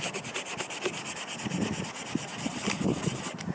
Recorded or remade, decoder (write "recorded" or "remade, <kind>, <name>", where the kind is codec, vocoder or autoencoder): recorded